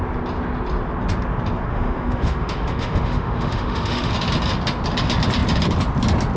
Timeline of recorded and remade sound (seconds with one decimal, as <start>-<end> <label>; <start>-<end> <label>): 0.0-1.7 recorded; 1.7-4.1 remade; 4.1-6.4 recorded

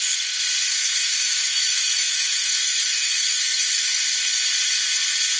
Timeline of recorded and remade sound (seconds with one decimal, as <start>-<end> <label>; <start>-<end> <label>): 0.0-0.7 recorded; 0.7-3.9 remade; 3.9-5.4 recorded

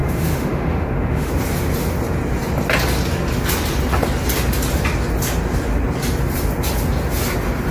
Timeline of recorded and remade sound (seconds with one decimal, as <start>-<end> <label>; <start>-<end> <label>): 0.0-1.3 remade; 1.3-7.7 recorded

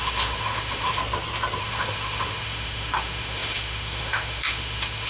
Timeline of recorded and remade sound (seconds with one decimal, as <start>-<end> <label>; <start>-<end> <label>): 0.0-1.0 remade; 1.0-1.6 recorded; 1.6-5.1 remade

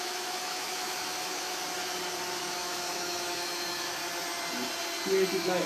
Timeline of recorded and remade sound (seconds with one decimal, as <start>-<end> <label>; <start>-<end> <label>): 0.0-1.6 remade; 1.6-2.4 recorded; 2.4-4.0 remade; 4.0-5.3 recorded; 5.3-5.7 remade